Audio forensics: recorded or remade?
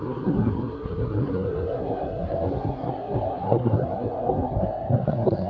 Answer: remade